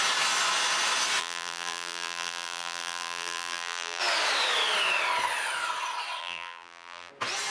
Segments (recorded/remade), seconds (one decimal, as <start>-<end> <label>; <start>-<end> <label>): 0.0-1.2 recorded; 1.2-4.0 remade; 4.0-6.2 recorded; 6.2-7.1 remade; 7.1-7.5 recorded